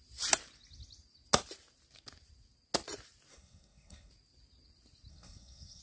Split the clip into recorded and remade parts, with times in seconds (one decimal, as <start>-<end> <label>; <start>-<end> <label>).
0.0-3.3 recorded; 3.3-4.1 remade; 4.1-5.1 recorded; 5.1-5.8 remade